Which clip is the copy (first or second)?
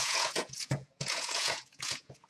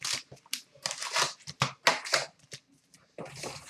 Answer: first